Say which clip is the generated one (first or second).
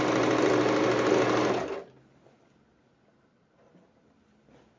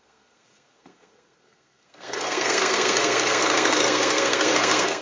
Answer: second